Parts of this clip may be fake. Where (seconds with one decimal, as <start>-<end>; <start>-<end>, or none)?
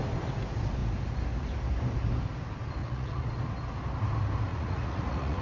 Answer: 2.8-3.3; 4.5-5.4